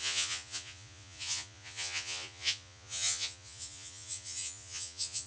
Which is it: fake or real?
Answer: fake